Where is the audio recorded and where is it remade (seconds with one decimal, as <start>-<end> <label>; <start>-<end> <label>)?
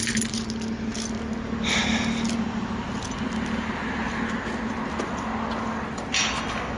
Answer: 0.0-6.8 recorded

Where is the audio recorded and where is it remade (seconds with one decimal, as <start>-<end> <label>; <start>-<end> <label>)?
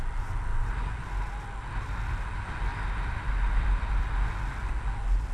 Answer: 0.0-2.7 recorded; 2.7-4.0 remade; 4.0-5.3 recorded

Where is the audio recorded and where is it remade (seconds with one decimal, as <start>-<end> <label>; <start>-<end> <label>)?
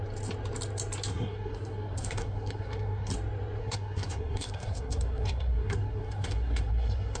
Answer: 0.0-1.1 recorded; 1.1-3.1 remade; 3.1-3.6 recorded; 3.6-7.2 remade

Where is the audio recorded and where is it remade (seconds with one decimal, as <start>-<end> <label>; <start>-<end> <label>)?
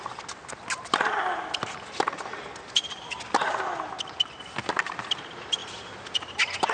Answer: 0.0-6.7 recorded